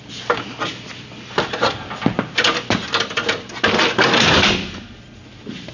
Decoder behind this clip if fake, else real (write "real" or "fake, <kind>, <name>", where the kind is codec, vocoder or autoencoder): real